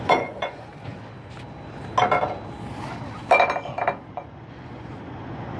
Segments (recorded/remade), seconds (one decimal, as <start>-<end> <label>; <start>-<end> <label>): 0.0-0.7 remade; 0.7-4.1 recorded; 4.1-5.6 remade